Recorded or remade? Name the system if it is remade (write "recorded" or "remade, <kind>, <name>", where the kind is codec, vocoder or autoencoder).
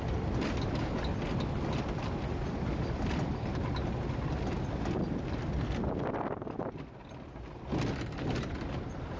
recorded